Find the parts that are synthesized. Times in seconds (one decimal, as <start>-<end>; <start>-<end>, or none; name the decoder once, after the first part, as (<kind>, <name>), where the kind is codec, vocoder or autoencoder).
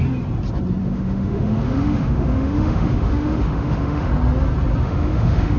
0.8-4.1 (autoencoder, DAC-VAE); 4.8-5.6